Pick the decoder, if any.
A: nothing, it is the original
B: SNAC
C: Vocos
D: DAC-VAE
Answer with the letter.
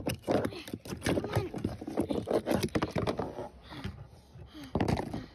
A